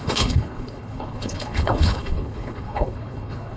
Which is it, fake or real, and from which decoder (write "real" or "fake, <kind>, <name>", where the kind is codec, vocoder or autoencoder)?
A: fake, codec, HILCodec